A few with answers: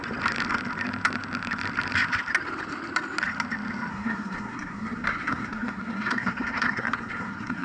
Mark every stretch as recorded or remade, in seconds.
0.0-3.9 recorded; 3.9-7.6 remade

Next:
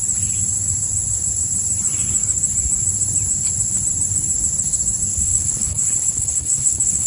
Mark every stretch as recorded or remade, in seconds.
0.0-5.1 recorded; 5.1-7.1 remade

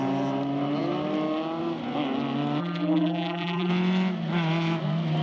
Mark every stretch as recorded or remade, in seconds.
0.0-2.6 recorded; 2.6-3.7 remade; 3.7-5.2 recorded